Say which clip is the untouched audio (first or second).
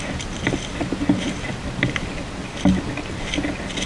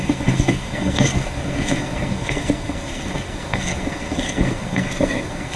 first